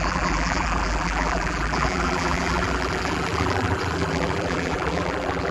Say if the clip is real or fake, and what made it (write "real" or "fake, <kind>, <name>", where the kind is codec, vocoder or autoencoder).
fake, vocoder, BigVGAN v2